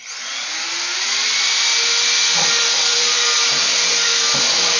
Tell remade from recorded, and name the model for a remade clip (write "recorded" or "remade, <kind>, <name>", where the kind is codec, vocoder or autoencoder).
recorded